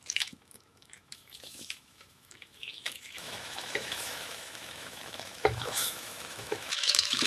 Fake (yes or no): yes